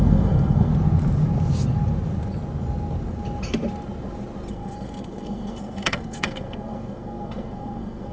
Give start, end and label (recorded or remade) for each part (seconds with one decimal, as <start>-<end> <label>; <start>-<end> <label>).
0.0-0.7 remade; 0.7-4.5 recorded; 4.5-8.1 remade